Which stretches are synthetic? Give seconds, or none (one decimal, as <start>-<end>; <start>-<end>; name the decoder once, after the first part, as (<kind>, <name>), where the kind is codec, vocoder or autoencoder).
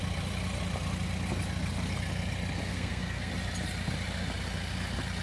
2.7-3.3 (codec, SNAC)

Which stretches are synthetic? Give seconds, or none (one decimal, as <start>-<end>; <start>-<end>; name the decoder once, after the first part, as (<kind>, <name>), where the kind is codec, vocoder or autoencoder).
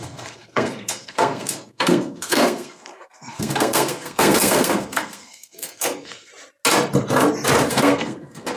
0.0-6.3 (codec, SNAC); 7.7-8.6